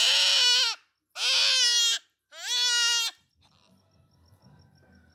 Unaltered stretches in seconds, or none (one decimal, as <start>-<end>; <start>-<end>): 0.0-5.1